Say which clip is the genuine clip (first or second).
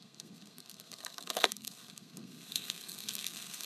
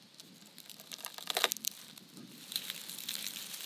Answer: second